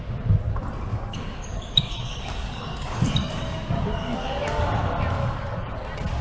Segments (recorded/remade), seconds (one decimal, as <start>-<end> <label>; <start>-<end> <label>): 0.0-0.9 recorded; 0.9-4.6 remade; 4.6-5.2 recorded; 5.2-5.7 remade; 5.7-6.2 recorded